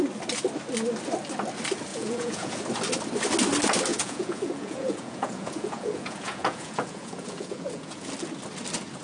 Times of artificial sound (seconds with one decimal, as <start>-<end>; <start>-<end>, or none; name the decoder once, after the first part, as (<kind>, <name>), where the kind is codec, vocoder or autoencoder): 1.9-2.6 (vocoder, Vocos); 3.9-8.1

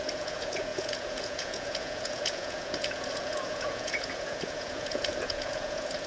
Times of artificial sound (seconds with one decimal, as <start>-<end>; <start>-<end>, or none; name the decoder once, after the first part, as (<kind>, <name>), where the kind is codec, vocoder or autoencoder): 0.0-6.1 (vocoder, Vocos)

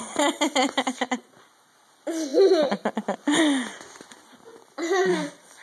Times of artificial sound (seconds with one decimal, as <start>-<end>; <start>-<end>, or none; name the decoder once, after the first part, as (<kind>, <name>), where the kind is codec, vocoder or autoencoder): none

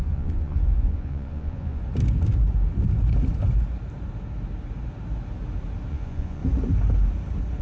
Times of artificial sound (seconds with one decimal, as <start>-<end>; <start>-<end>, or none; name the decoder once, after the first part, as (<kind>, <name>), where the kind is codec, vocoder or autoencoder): 0.0-1.8 (vocoder, Vocos); 5.9-6.4